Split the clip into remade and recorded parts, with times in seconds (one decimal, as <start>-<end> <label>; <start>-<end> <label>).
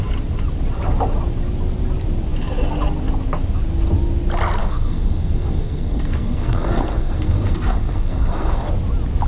0.0-4.6 recorded; 4.6-8.7 remade; 8.7-9.3 recorded